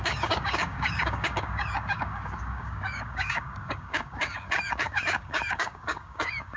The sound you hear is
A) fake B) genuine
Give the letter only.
A